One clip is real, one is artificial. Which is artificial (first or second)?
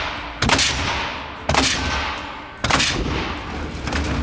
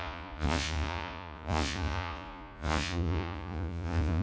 second